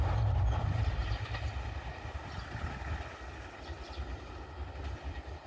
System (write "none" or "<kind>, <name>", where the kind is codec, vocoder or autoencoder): none